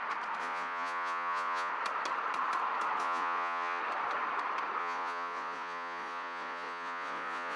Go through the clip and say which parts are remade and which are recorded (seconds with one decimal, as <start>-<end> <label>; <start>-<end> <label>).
0.0-0.4 recorded; 0.4-1.7 remade; 1.7-3.0 recorded; 3.0-3.8 remade; 3.8-4.8 recorded; 4.8-7.6 remade